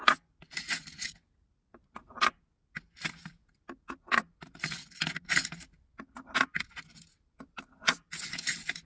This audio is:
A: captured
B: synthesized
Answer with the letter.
A